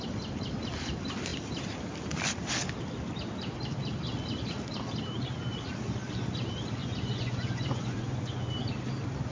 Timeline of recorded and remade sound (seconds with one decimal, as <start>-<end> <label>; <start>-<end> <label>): 0.0-6.8 recorded; 6.8-8.5 remade; 8.5-9.3 recorded